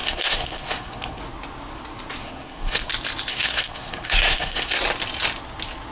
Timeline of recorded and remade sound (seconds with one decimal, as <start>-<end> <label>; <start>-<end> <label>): 0.0-1.2 remade; 1.2-2.2 recorded; 2.2-2.9 remade; 2.9-3.3 recorded; 3.3-4.8 remade; 4.8-5.9 recorded